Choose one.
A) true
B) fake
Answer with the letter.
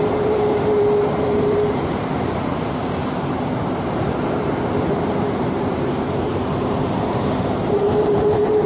B